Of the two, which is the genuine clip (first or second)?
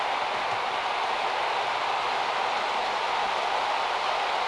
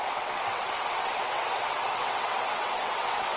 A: first